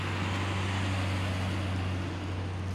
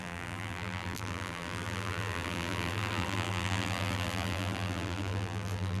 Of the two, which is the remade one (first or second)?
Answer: second